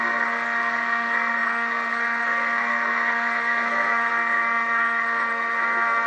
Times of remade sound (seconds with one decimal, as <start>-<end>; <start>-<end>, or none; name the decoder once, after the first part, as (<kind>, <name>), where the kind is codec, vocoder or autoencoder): 0.0-6.1 (codec, SNAC)